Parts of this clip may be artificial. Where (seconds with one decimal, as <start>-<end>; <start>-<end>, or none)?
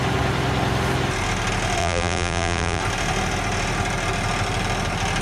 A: 1.8-2.8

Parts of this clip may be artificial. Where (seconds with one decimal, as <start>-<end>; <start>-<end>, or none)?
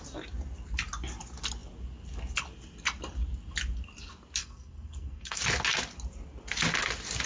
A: 4.4-5.4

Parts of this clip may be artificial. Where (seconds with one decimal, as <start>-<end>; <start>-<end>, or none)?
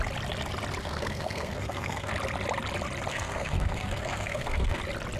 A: 0.8-2.1; 3.1-4.8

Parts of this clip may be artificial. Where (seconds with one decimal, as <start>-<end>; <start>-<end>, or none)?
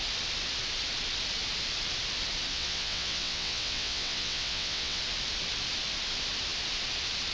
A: 2.5-5.0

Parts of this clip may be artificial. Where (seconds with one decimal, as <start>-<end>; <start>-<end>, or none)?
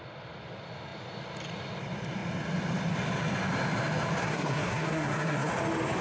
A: 4.2-5.5